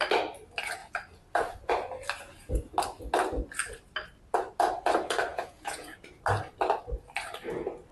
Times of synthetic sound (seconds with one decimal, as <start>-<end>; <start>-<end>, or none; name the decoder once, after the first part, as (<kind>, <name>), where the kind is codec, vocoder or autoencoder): 5.3-6.0 (vocoder, Vocos)